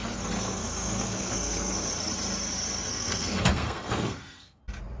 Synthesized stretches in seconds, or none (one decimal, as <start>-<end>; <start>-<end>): 0.0-1.9; 2.9-4.6